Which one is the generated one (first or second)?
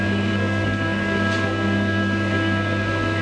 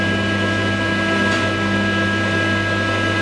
first